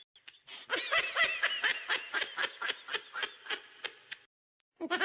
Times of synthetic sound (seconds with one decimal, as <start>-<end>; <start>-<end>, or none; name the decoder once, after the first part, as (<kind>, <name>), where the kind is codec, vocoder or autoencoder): 1.7-4.4 (vocoder, BigVGAN v2)